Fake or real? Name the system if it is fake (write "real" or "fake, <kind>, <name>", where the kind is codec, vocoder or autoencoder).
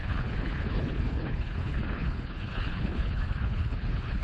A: fake, codec, HILCodec